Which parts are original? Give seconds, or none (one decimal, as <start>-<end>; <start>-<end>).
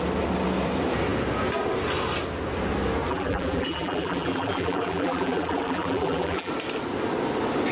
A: 0.0-3.1; 6.5-7.7